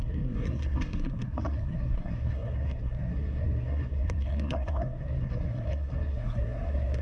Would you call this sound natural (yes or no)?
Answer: no